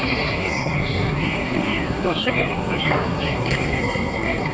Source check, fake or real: fake